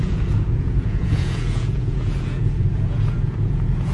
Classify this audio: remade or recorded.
remade